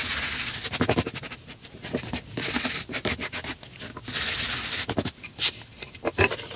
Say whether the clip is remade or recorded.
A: recorded